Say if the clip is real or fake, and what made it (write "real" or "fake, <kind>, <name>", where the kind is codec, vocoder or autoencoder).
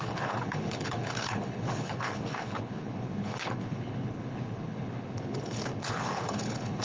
fake, codec, HILCodec